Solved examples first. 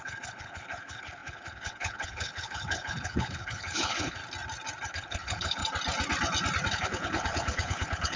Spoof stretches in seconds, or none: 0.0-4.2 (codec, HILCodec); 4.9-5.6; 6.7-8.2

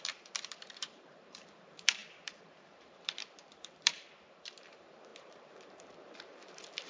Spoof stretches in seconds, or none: 0.0-6.9 (vocoder, BigVGAN v2)

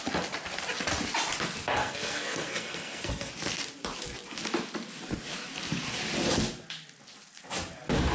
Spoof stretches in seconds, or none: 1.8-3.3 (codec, SNAC)

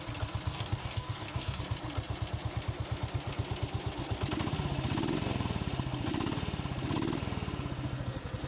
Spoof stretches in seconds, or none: 0.5-1.6 (codec, DAC)